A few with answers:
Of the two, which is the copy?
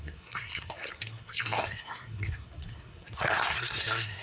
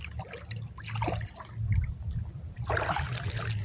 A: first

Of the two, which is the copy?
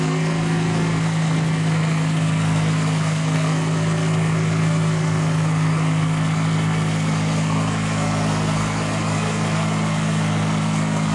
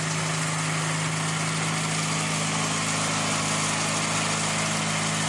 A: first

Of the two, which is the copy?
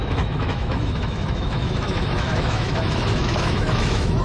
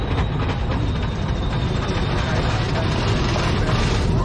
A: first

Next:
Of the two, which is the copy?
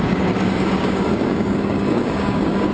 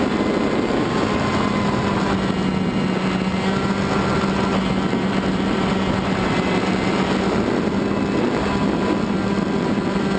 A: first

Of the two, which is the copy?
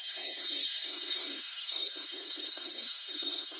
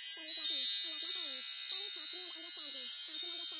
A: first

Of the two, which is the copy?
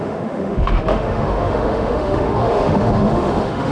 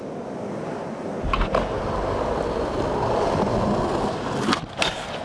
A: first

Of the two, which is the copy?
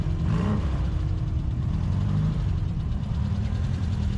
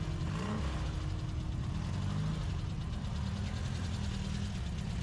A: first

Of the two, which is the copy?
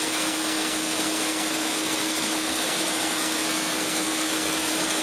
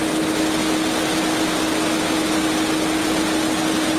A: first